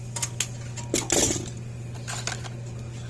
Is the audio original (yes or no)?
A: yes